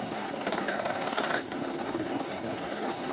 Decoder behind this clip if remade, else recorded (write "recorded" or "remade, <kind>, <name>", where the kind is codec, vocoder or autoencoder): remade, codec, SNAC